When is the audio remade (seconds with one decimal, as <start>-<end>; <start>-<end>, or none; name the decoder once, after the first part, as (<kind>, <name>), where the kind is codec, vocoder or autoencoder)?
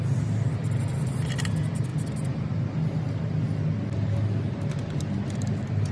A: none